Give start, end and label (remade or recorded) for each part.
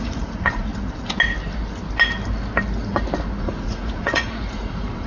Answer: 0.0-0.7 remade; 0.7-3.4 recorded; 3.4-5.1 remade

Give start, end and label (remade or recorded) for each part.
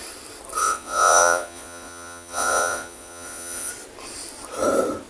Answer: 0.0-0.6 recorded; 0.6-3.7 remade; 3.7-5.1 recorded